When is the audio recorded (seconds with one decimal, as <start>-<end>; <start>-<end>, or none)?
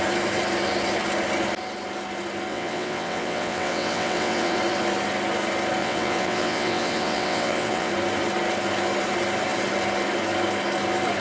0.0-2.5; 4.6-5.8; 7.9-11.2